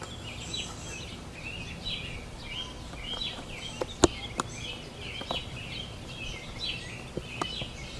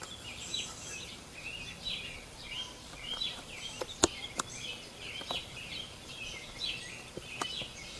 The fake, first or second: second